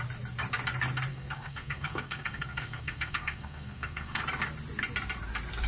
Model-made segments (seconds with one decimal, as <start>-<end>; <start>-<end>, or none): 1.1-4.2